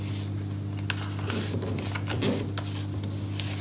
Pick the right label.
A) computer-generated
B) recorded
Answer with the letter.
B